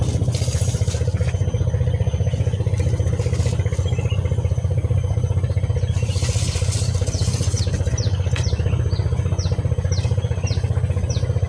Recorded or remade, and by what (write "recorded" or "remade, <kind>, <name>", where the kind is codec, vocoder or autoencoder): recorded